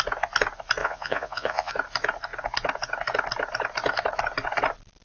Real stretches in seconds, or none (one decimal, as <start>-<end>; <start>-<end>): 0.0-0.8; 1.7-5.0